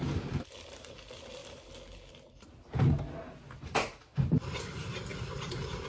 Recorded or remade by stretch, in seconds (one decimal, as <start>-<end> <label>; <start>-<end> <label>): 0.0-4.1 recorded; 4.1-4.6 remade; 4.6-5.9 recorded